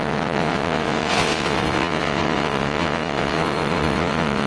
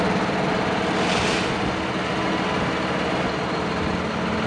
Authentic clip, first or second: second